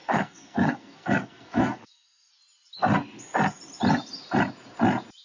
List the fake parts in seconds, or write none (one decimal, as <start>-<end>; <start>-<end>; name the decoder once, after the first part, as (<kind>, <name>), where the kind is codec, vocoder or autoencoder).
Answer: 0.0-2.3 (codec, SNAC)